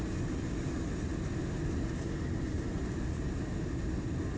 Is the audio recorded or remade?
recorded